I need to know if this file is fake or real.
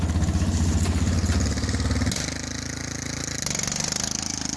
real